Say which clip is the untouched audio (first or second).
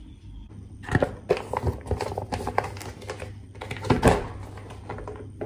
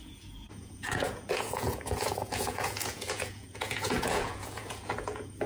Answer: first